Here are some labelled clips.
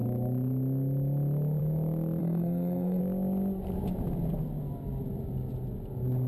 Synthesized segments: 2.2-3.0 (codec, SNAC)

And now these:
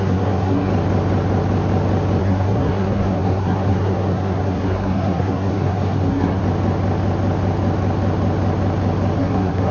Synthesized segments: 0.0-0.7 (codec, SNAC); 2.2-6.4; 9.2-9.7

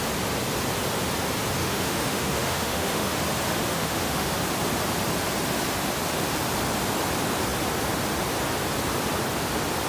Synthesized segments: 1.6-3.2 (autoencoder, DAC-VAE); 3.7-4.3